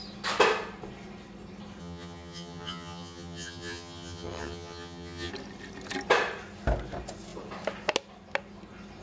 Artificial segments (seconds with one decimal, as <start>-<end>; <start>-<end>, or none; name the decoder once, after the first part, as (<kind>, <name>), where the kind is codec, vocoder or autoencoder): 1.8-5.3 (vocoder, HiFi-GAN)